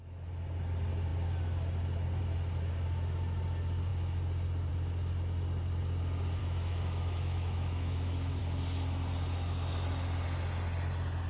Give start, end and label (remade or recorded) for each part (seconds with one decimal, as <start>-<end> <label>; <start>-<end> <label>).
0.0-6.4 recorded; 6.4-8.4 remade; 8.4-11.3 recorded